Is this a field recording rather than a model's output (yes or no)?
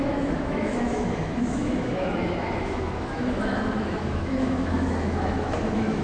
no